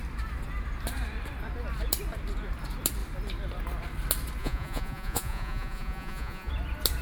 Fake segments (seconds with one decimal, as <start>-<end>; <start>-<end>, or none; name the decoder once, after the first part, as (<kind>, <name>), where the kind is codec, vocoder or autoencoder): 4.4-6.5 (vocoder, Vocos)